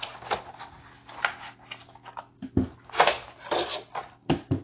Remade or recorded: recorded